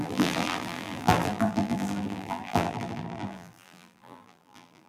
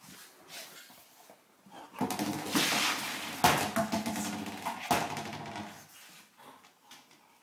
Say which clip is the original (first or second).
second